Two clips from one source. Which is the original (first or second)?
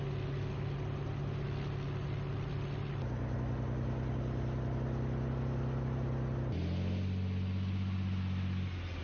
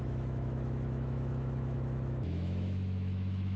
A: first